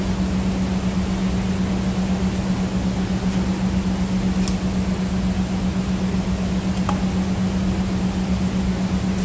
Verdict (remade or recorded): recorded